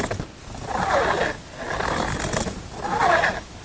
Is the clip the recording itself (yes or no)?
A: yes